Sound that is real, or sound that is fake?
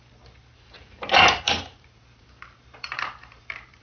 fake